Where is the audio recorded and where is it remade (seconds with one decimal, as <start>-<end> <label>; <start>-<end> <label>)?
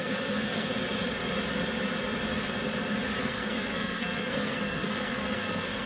0.0-0.7 remade; 0.7-3.2 recorded; 3.2-5.9 remade